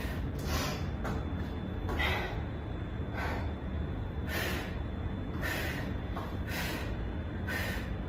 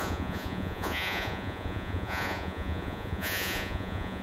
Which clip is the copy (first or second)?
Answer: second